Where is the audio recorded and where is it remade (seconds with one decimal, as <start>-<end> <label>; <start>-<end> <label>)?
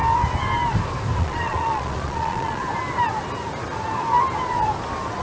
0.0-1.2 recorded; 1.2-2.6 remade; 2.6-5.2 recorded